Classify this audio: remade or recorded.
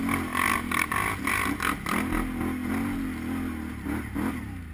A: recorded